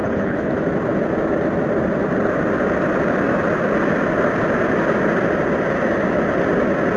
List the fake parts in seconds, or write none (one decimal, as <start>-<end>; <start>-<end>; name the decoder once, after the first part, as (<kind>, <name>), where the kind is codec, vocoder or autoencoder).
0.0-0.5 (codec, HILCodec)